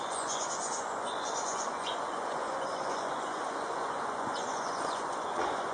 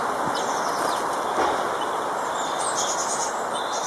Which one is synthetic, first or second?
first